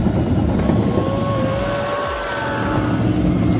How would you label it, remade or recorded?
recorded